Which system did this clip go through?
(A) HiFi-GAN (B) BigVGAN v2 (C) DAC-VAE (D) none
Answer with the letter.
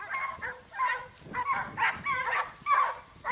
D